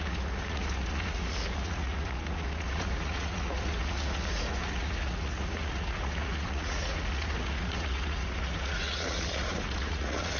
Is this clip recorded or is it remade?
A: remade